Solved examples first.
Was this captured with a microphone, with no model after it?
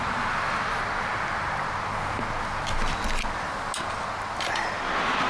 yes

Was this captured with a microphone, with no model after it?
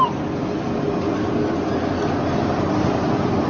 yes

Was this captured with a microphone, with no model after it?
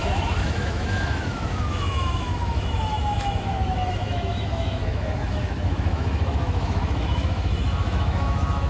no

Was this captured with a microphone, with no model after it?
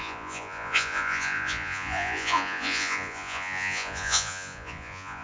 no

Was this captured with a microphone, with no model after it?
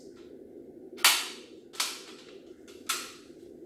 yes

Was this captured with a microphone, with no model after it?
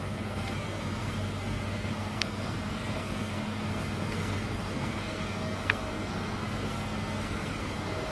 no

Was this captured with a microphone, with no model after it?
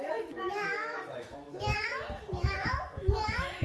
no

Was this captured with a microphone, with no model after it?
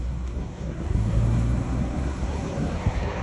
no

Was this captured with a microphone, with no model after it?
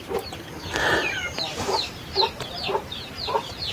no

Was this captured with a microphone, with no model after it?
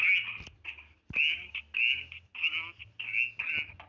yes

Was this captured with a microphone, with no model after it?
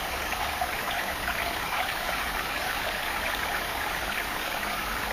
no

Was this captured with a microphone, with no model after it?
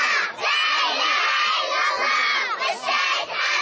yes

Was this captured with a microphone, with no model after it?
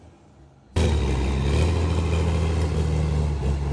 yes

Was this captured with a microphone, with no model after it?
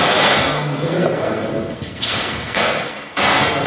no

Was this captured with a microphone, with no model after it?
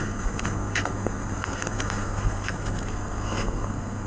no